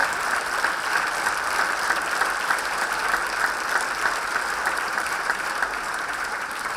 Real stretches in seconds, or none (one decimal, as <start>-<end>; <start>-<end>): 0.0-2.5; 3.0-4.9